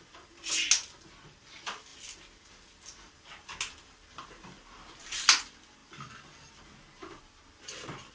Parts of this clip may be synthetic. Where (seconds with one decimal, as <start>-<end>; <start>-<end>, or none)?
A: 5.8-6.5